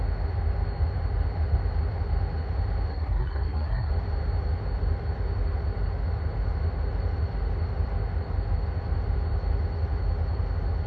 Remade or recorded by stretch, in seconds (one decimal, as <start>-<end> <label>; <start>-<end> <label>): 0.0-2.9 recorded; 2.9-3.9 remade; 3.9-10.9 recorded